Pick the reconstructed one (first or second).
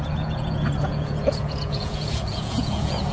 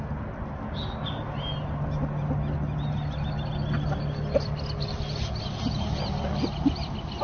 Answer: first